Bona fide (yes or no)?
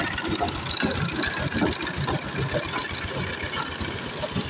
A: yes